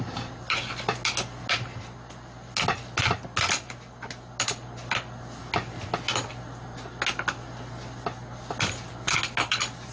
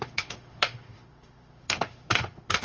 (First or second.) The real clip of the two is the first